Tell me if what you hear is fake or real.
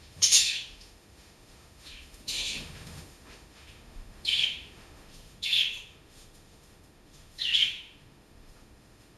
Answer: fake